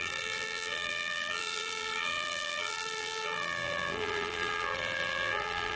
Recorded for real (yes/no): no